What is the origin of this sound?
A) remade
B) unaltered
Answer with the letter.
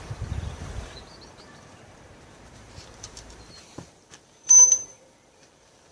A